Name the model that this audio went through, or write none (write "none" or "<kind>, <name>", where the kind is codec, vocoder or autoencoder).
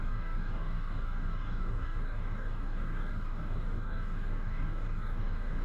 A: codec, DAC